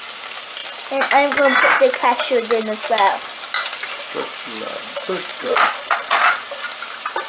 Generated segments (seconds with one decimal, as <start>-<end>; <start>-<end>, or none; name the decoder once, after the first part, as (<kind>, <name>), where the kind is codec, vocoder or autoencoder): 5.3-6.4 (vocoder, Vocos)